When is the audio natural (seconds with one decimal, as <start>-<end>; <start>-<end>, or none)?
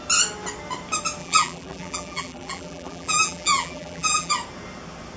0.0-1.2; 4.3-5.2